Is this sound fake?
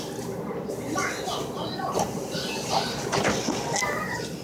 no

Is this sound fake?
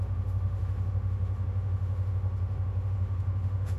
yes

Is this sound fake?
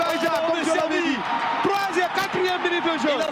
no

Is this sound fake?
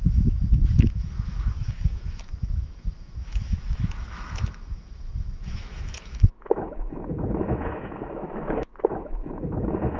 yes